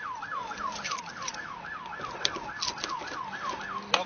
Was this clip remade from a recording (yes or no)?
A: no